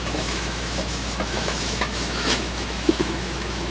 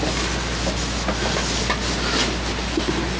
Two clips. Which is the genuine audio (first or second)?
second